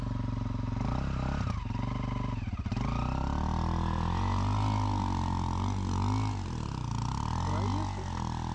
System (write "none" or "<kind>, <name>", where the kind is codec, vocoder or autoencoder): none